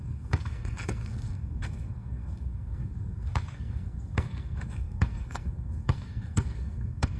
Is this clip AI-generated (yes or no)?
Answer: yes